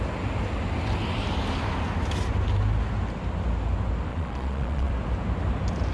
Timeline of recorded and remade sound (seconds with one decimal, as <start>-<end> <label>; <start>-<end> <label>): 0.0-4.1 recorded; 4.1-4.9 remade; 4.9-5.9 recorded